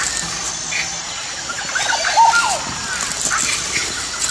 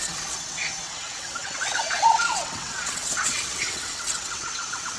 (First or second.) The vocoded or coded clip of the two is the second